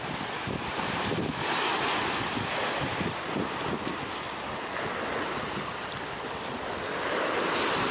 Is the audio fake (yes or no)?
no